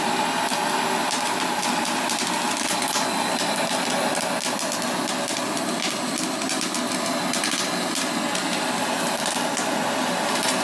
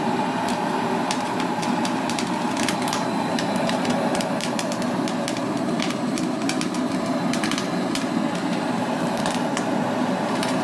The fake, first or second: second